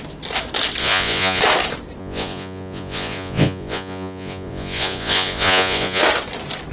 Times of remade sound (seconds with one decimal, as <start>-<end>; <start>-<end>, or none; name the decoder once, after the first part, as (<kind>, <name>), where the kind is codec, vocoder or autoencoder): 0.8-1.4 (vocoder, Vocos); 2.0-6.0